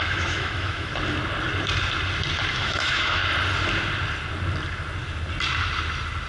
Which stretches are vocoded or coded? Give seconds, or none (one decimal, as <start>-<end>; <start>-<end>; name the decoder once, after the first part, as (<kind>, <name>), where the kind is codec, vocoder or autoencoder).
0.0-0.9 (autoencoder, DAC-VAE); 2.5-3.2